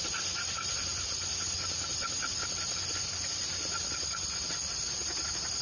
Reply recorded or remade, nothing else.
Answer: recorded